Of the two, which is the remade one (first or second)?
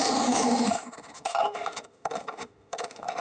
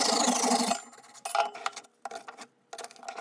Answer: first